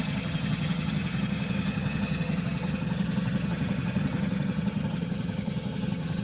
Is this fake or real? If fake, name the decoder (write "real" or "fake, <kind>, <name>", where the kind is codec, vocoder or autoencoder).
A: fake, vocoder, HiFi-GAN